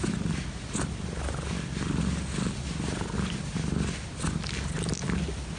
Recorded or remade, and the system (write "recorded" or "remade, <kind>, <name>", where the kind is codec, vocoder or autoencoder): recorded